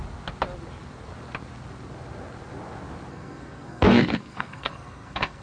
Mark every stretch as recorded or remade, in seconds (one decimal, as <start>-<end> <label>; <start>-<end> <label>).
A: 0.0-3.1 recorded; 3.1-5.4 remade